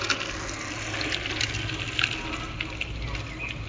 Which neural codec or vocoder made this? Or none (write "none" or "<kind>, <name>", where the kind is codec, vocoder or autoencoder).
none